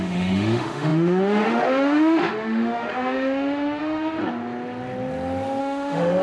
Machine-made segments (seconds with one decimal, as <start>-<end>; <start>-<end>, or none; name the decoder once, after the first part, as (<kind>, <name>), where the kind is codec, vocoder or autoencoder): 0.0-4.2 (autoencoder, DAC-VAE); 5.6-6.2